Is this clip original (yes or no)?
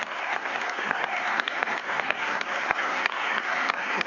no